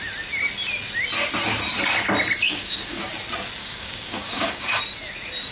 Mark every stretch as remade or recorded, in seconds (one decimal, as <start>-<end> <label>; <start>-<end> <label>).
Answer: 0.0-2.4 recorded; 2.4-3.1 remade; 3.1-3.6 recorded; 3.6-4.8 remade; 4.8-5.5 recorded